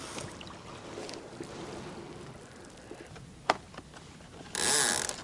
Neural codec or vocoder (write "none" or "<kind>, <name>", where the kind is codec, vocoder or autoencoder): none